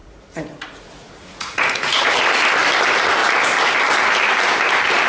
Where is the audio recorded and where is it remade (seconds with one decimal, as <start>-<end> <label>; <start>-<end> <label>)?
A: 0.0-2.1 remade; 2.1-5.1 recorded

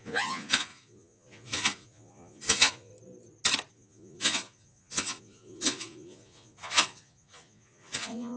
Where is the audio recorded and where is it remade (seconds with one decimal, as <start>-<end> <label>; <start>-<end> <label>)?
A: 0.0-2.9 remade; 2.9-3.7 recorded; 3.7-8.4 remade

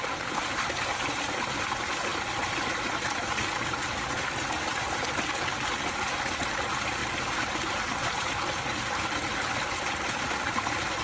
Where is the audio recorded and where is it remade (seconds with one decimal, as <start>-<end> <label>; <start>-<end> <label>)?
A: 0.0-11.0 recorded

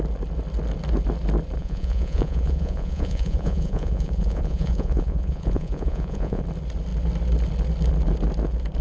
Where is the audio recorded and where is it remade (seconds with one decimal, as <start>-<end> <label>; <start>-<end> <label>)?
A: 0.0-1.6 recorded; 1.6-6.4 remade; 6.4-8.8 recorded

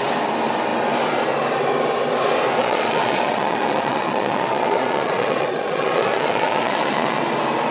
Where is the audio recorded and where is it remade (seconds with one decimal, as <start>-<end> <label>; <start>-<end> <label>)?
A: 0.0-2.6 recorded; 2.6-7.2 remade; 7.2-7.7 recorded

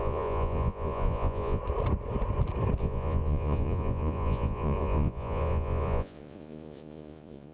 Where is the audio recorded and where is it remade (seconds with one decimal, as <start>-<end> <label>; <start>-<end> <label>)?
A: 0.0-1.6 remade; 1.6-2.8 recorded; 2.8-7.5 remade

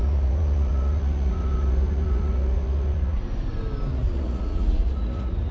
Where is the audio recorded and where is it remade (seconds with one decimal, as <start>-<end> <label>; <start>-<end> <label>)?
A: 0.0-3.2 remade; 3.2-3.9 recorded; 3.9-5.5 remade

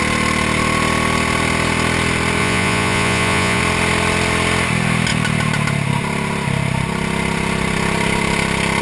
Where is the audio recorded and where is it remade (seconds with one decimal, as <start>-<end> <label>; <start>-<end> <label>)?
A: 0.0-2.4 recorded; 2.4-3.6 remade; 3.6-8.8 recorded